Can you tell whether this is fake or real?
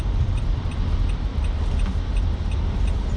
real